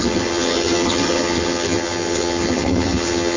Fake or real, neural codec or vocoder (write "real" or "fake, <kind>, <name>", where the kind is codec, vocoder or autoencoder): fake, vocoder, HiFi-GAN